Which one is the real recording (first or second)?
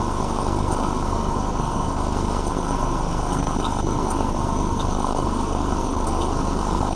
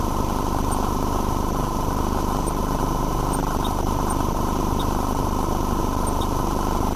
second